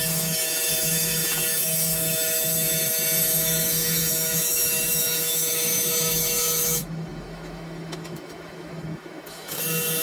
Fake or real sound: fake